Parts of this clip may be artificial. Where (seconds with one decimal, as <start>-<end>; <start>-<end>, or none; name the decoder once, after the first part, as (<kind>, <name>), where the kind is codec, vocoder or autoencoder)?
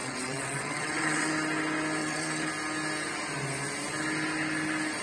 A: 0.0-1.3 (vocoder, WaveNeXt); 2.0-2.5